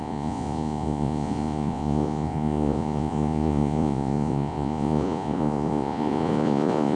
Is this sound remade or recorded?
remade